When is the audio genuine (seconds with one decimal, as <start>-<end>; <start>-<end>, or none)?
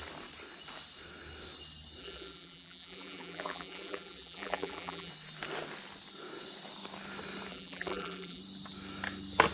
0.0-2.0; 5.1-7.5; 8.4-9.5